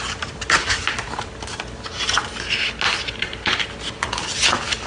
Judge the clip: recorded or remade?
recorded